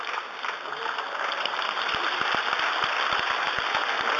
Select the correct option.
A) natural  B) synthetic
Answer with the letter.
A